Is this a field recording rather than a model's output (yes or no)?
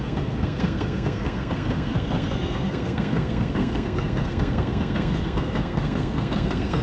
no